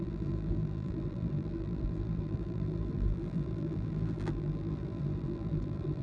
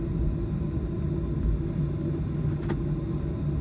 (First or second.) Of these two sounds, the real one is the second